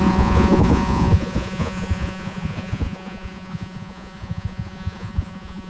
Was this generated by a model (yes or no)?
yes